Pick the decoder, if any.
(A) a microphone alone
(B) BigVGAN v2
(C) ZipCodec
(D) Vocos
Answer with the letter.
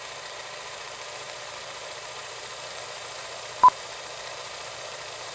B